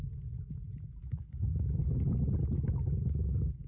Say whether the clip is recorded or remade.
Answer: recorded